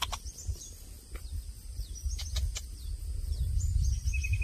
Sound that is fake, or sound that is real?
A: real